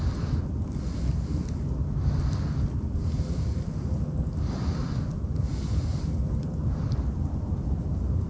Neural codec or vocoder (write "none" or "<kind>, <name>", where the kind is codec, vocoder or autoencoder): none